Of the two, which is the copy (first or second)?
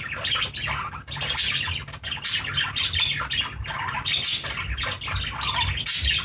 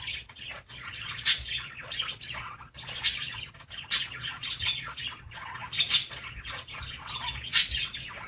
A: second